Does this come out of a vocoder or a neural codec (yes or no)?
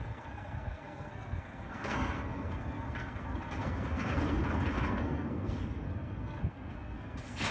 yes